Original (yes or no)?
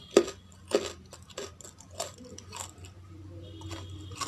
yes